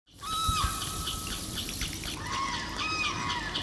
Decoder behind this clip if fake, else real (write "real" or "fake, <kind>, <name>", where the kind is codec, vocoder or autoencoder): fake, vocoder, BigVGAN v2